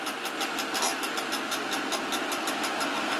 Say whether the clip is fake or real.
real